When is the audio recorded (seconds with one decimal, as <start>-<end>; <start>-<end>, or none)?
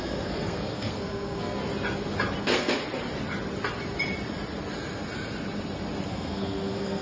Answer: 1.6-2.4; 2.8-6.1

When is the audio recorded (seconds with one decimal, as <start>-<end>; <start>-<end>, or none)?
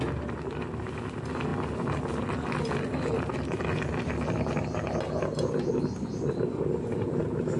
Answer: 0.0-7.6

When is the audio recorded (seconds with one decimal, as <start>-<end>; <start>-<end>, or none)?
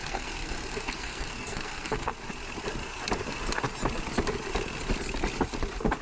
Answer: 2.1-6.0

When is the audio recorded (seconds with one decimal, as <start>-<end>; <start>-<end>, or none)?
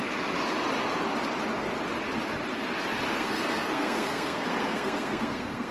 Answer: 0.0-3.1